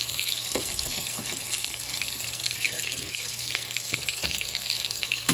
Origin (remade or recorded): remade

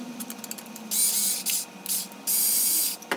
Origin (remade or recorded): recorded